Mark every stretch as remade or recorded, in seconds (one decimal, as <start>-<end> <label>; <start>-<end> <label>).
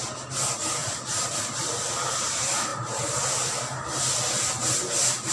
0.0-5.3 recorded